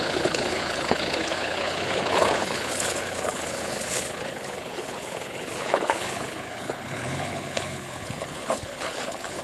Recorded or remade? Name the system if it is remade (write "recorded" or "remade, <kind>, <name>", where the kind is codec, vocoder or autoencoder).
remade, codec, HILCodec